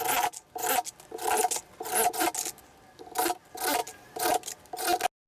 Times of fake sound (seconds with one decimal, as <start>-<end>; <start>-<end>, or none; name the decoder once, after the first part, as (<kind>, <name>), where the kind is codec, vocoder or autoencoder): none